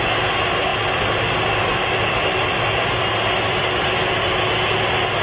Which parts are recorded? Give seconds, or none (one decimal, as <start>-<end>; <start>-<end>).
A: 0.0-5.2